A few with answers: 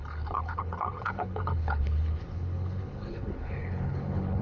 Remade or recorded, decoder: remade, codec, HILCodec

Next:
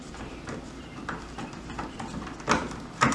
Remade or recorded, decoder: recorded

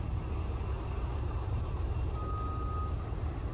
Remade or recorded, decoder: recorded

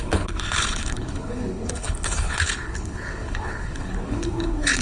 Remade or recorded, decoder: remade, codec, HILCodec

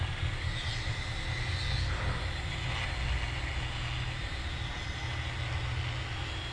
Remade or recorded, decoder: recorded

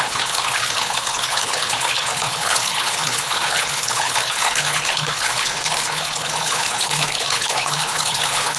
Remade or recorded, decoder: remade, codec, HILCodec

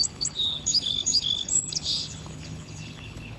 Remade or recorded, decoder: remade, codec, HILCodec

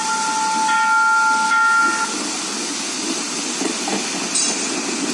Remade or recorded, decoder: recorded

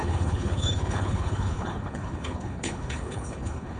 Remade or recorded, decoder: remade, codec, HILCodec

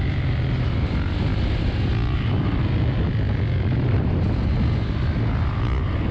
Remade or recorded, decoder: recorded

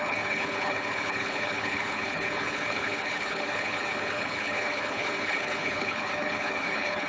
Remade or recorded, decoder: remade, codec, HILCodec